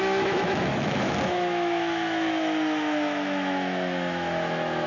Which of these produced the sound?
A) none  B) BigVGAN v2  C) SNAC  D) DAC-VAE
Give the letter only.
D